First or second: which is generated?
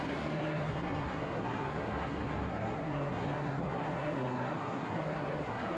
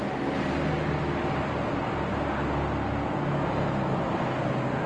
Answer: first